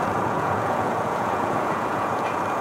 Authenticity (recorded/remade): remade